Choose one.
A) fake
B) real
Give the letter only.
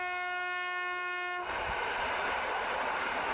B